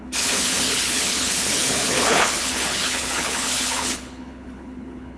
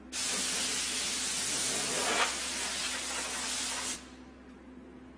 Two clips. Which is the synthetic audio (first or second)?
first